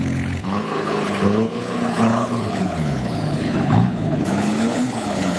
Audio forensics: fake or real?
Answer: fake